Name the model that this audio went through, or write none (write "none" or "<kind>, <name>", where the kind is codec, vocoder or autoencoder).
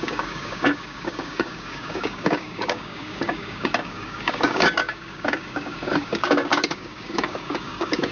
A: codec, DAC